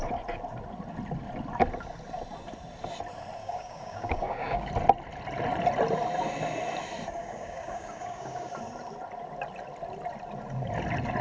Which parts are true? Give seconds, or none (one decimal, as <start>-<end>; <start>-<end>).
0.0-3.4; 4.7-7.2; 8.5-11.2

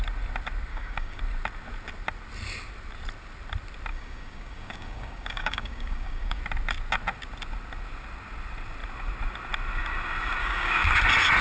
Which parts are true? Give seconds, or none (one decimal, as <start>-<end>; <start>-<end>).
0.0-0.7; 1.2-3.9; 6.4-10.4; 11.0-11.4

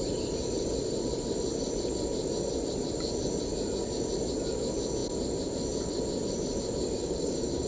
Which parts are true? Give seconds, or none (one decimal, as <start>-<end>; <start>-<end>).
0.0-7.0

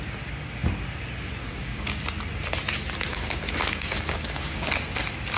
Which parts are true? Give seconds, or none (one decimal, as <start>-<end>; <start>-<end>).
0.0-1.4; 2.0-3.1; 4.7-5.4

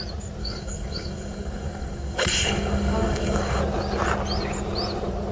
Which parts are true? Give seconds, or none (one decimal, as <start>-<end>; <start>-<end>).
0.0-0.4; 3.6-5.3

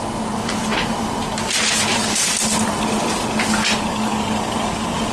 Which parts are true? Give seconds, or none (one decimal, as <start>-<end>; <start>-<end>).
0.0-3.9

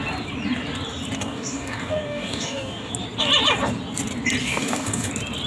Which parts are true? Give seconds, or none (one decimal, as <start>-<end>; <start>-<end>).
0.0-1.2; 2.9-4.4; 5.1-5.5